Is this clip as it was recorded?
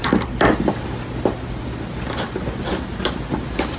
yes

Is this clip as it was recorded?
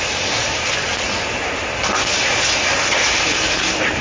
yes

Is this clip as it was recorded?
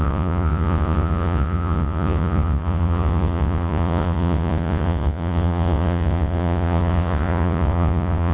no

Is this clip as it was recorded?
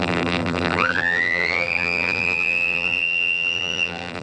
no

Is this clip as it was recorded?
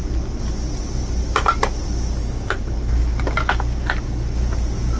yes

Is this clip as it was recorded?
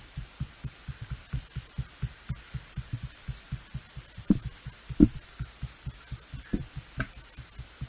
no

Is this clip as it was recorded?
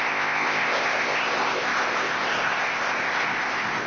no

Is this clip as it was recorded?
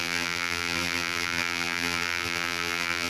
no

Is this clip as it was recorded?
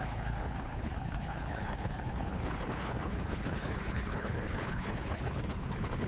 no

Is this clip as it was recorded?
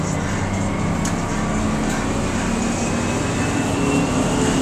yes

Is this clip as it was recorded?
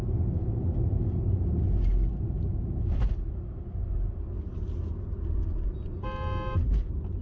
yes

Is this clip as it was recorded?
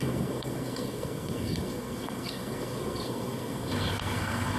no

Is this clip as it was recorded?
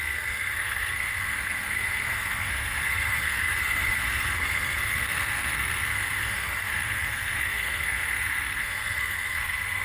no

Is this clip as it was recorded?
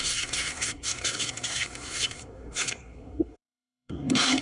no